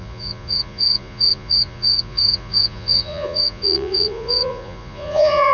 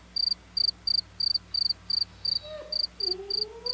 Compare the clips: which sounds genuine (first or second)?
second